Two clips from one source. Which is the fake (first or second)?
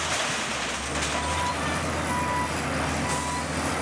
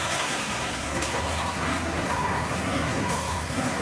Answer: second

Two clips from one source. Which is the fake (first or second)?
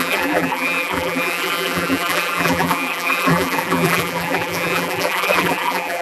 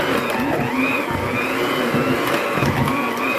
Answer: first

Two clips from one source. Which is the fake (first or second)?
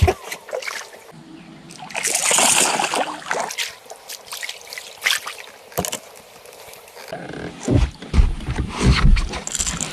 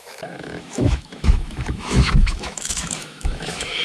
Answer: second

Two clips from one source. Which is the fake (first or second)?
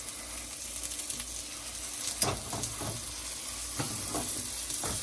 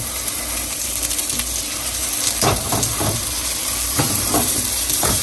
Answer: second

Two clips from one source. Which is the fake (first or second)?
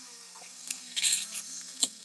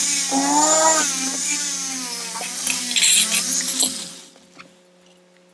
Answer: first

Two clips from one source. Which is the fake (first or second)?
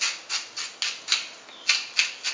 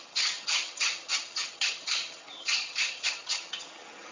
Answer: second